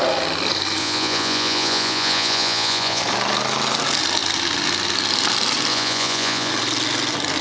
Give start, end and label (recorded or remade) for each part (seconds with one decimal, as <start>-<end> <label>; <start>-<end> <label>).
0.0-0.8 recorded; 0.8-3.0 remade; 3.0-5.7 recorded; 5.7-6.5 remade; 6.5-7.4 recorded